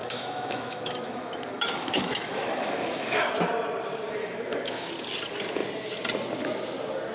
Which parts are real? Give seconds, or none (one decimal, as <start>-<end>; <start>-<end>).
3.2-4.2; 4.9-7.1